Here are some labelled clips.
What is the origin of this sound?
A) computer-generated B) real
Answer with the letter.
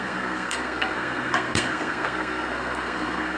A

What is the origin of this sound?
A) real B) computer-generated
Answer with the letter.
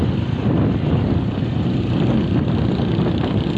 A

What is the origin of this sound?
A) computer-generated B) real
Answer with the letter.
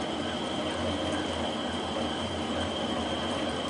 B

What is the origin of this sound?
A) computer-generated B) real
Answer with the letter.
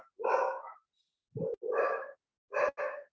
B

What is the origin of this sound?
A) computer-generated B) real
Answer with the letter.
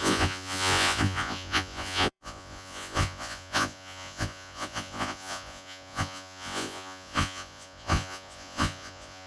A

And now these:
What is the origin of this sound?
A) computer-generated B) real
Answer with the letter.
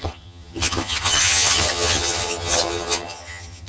A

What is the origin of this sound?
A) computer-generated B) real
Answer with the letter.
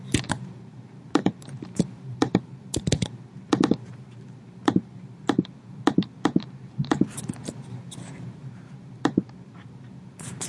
A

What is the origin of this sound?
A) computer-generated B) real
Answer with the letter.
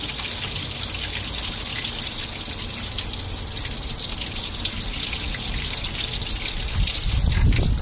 B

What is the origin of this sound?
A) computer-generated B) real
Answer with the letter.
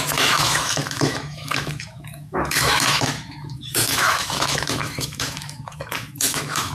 A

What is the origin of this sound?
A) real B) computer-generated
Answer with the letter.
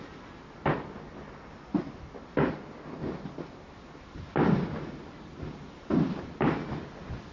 A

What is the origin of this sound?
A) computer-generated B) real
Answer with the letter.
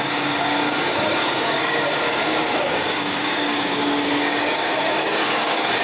A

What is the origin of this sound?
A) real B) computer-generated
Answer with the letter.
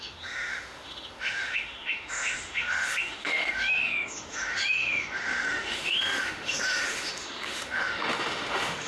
B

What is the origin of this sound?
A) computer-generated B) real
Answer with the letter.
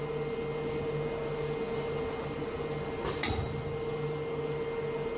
B